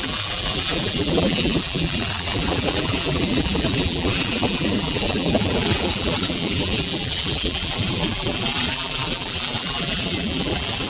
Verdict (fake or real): fake